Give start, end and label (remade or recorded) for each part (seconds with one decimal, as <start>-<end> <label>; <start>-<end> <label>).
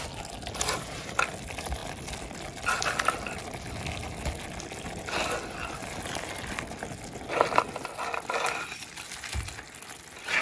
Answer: 0.0-10.4 recorded